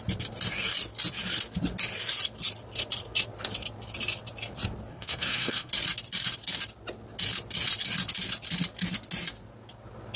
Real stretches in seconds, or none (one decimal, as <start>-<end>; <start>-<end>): 0.0-4.9; 5.7-10.2